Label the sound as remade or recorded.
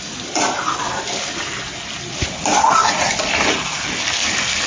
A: recorded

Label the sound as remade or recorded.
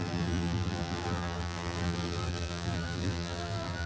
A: remade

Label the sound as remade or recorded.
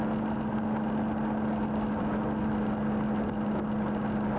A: recorded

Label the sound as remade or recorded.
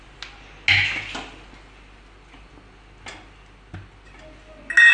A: recorded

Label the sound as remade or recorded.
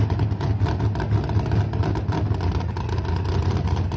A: recorded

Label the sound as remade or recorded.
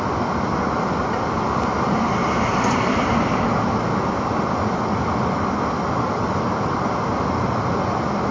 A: recorded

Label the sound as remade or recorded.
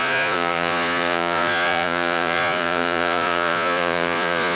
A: remade